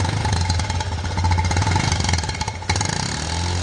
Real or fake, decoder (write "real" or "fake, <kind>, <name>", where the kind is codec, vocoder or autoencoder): real